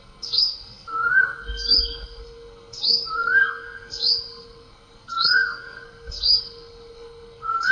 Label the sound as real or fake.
fake